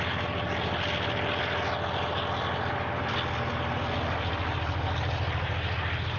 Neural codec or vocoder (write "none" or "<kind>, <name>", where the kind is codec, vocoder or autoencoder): none